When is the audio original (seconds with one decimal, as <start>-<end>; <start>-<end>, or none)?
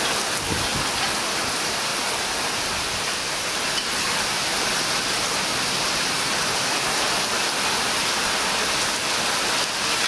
0.0-10.1